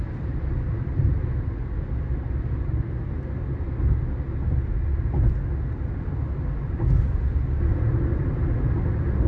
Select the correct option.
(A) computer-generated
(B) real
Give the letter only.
B